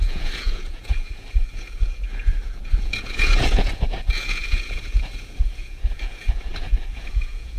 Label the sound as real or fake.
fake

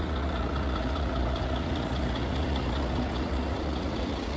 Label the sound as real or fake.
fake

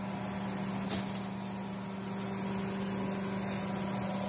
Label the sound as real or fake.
real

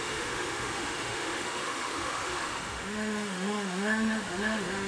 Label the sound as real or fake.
fake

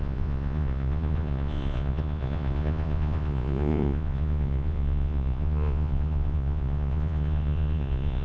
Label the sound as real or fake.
fake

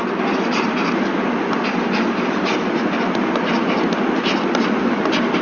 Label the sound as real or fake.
real